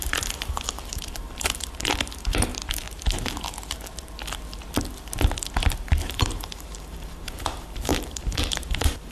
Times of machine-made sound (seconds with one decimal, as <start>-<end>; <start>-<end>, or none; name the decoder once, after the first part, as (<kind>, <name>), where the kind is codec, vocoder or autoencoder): 0.0-2.5 (vocoder, BigVGAN v2); 6.1-9.1